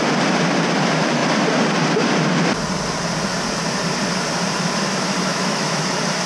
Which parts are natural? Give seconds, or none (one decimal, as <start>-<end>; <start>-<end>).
0.0-5.3; 5.8-6.3